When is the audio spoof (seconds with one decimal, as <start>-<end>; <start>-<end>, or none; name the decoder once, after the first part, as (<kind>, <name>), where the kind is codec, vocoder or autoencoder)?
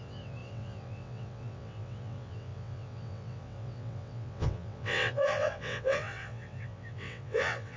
0.0-7.8 (vocoder, WaveNeXt)